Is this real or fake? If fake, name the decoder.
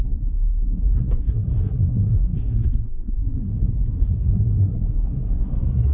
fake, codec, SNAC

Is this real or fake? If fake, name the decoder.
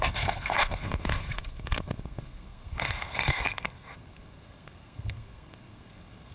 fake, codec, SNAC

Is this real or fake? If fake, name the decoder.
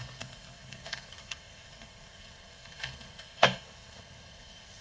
fake, codec, SNAC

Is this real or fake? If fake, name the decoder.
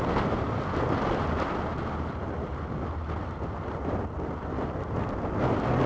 real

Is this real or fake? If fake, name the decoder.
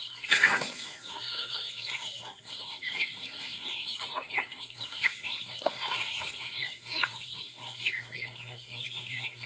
fake, codec, SNAC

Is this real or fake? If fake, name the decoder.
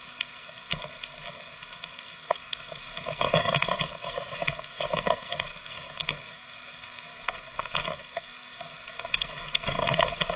fake, codec, SNAC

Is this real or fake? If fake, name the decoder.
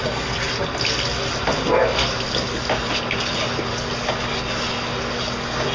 real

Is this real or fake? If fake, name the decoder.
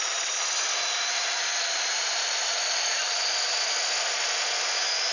real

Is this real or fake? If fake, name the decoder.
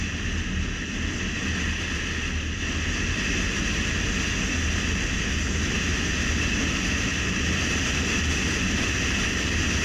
real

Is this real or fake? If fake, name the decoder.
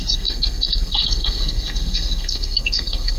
fake, codec, SNAC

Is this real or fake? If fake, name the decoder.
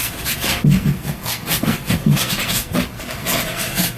fake, codec, SNAC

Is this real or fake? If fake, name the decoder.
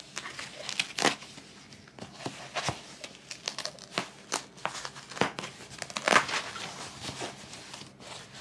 real